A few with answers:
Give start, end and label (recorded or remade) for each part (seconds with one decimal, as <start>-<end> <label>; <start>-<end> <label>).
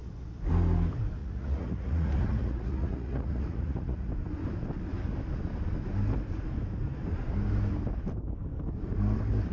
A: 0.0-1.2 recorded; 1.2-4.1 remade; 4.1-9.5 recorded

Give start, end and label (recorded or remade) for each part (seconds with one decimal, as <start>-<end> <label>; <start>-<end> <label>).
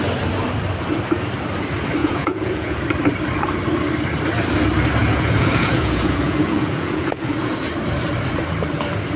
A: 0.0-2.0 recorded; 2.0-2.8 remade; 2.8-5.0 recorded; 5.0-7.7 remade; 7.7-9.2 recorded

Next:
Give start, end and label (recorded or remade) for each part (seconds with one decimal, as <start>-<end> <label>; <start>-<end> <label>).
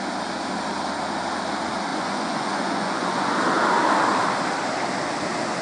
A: 0.0-1.9 recorded; 1.9-3.3 remade; 3.3-5.6 recorded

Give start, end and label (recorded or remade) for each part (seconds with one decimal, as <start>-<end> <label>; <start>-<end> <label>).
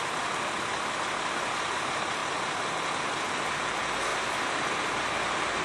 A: 0.0-5.6 recorded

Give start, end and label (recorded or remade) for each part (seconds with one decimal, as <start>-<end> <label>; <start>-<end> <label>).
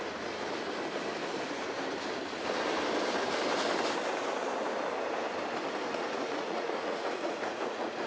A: 0.0-5.9 recorded; 5.9-8.1 remade